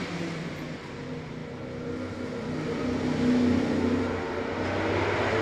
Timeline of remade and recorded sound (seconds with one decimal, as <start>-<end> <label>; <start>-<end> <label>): 0.0-5.4 recorded